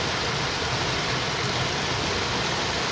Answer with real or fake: real